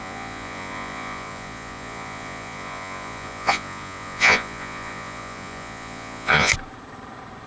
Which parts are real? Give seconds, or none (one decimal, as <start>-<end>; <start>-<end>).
6.5-7.5